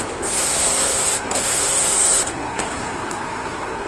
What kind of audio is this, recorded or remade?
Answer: remade